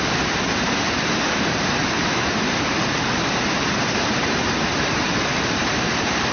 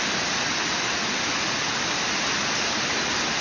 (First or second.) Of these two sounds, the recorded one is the second